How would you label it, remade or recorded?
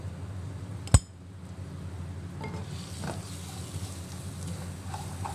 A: recorded